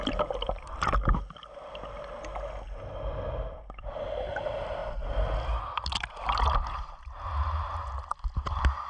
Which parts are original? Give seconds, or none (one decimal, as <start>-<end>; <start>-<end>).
0.0-4.8; 5.6-8.9